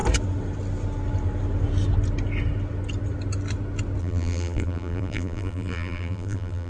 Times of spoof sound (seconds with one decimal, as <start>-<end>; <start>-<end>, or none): 4.0-6.7